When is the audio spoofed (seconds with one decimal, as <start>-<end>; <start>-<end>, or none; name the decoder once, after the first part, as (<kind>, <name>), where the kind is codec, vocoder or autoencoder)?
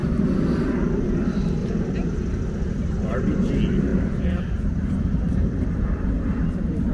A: 0.0-0.6 (vocoder, BigVGAN v2); 1.6-2.5; 3.9-6.4